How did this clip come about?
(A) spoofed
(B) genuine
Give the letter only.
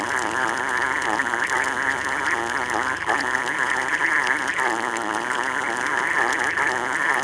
B